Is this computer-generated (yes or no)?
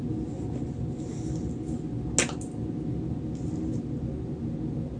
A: no